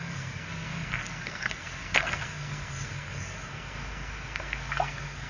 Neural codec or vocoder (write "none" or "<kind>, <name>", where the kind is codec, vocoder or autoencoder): codec, SNAC